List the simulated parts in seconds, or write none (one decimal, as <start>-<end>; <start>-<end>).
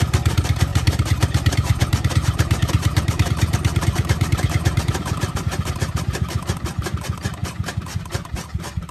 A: 0.7-5.7